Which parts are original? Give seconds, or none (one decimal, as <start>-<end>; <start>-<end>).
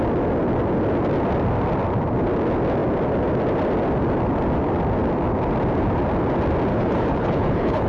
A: 0.0-6.7